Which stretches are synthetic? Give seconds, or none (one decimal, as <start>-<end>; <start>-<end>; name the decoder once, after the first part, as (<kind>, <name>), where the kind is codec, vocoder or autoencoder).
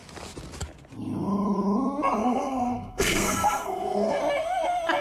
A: 2.2-4.2 (codec, SNAC)